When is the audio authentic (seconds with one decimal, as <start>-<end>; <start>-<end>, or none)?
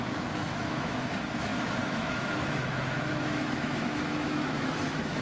none